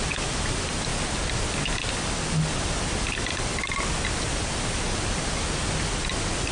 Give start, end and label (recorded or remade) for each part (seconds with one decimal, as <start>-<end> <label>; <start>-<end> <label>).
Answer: 0.0-0.9 remade; 0.9-1.9 recorded; 1.9-3.5 remade; 3.5-4.3 recorded; 4.3-6.5 remade